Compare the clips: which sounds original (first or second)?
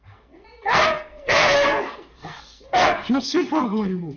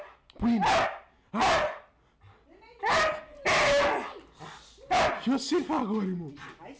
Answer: second